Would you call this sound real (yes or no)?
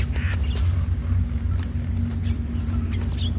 yes